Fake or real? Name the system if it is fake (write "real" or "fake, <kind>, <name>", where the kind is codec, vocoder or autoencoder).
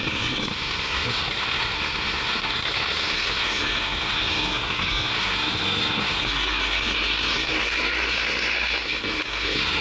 fake, codec, SNAC